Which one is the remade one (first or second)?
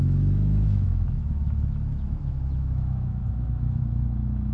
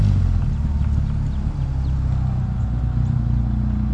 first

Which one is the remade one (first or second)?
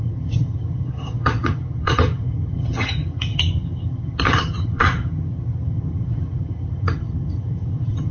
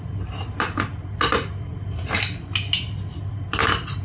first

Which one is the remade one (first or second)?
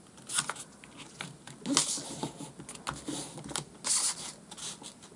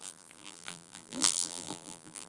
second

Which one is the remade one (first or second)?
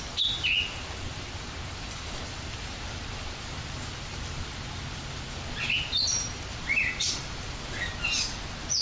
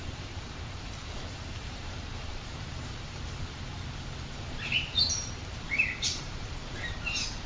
second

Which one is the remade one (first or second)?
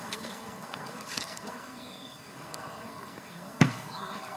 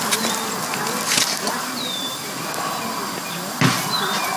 first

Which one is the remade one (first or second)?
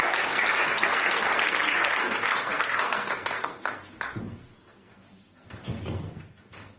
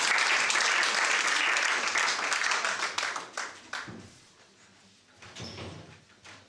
first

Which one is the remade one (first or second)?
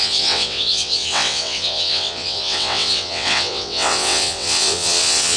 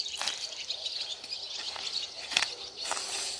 first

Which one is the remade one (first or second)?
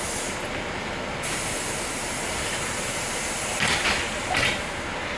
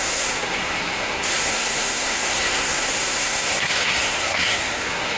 second